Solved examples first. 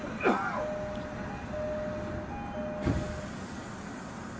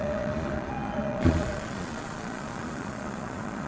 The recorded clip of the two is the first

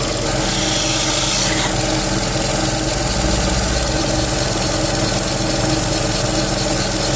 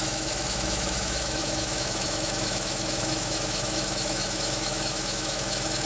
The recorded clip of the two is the first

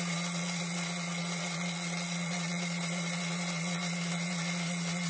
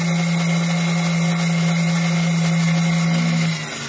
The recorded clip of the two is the second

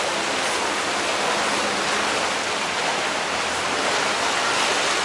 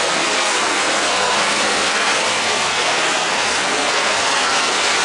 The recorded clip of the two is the first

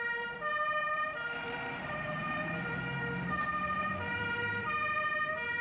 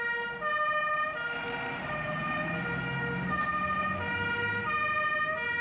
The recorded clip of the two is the second